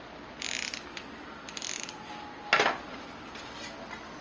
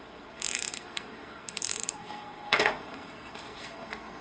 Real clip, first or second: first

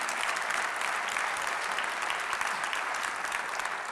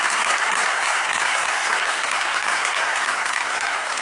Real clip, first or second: first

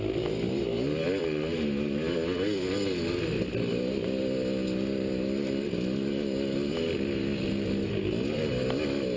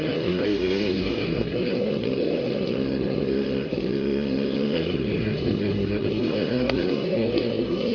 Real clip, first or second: first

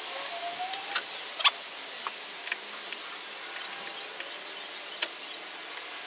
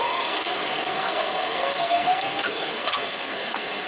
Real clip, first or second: first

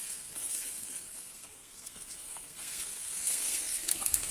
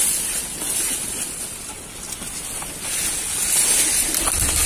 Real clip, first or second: second